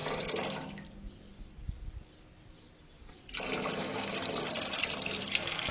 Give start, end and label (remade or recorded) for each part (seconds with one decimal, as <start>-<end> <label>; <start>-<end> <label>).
0.0-5.7 recorded

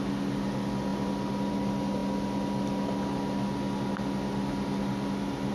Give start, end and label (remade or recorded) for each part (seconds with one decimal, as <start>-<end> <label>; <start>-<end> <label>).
0.0-5.5 recorded

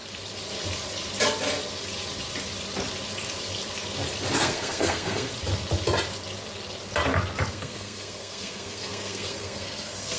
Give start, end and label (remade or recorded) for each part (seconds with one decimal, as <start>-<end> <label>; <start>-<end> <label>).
0.0-4.4 recorded; 4.4-5.3 remade; 5.3-7.5 recorded; 7.5-10.2 remade

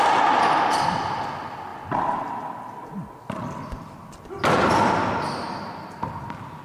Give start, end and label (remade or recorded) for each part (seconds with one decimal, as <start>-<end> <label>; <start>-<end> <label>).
0.0-6.6 recorded

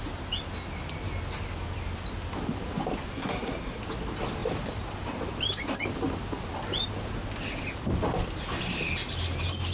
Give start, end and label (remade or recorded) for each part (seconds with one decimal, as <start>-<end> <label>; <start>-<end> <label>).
0.0-3.1 recorded; 3.1-3.8 remade; 3.8-9.7 recorded